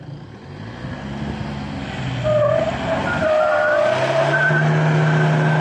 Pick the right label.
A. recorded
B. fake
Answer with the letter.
A